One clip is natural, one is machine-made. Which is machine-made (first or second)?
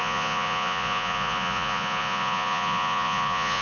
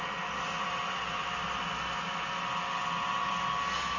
first